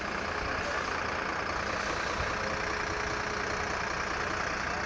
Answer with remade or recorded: recorded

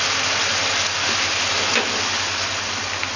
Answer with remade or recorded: recorded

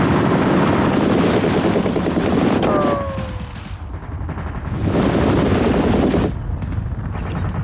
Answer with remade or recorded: recorded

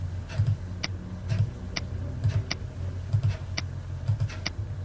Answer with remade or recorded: recorded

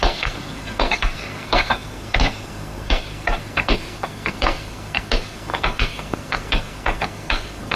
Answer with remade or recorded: remade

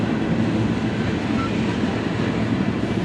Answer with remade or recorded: recorded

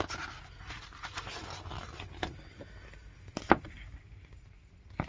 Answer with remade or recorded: recorded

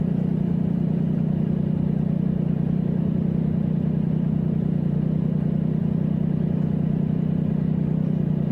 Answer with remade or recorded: recorded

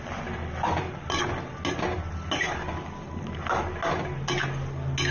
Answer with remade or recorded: recorded